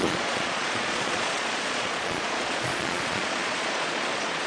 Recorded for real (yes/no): no